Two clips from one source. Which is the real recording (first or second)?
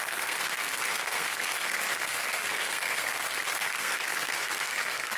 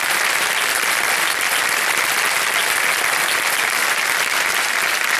second